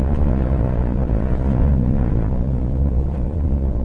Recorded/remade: remade